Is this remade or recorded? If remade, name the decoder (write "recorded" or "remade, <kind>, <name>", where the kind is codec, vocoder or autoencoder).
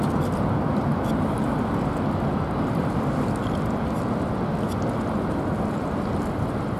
recorded